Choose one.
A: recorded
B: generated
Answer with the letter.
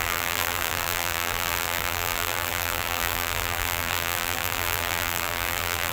B